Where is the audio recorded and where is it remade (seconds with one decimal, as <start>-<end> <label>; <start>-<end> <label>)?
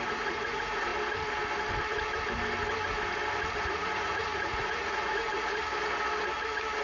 0.0-0.9 remade; 0.9-3.6 recorded; 3.6-5.6 remade; 5.6-6.8 recorded